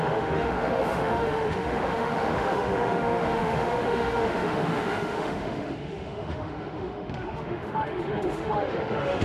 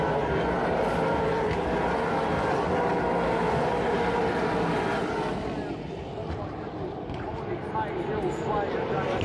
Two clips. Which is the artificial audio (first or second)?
first